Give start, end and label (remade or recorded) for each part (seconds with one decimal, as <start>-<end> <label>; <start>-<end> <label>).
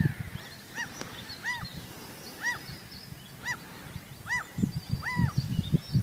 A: 0.0-6.0 recorded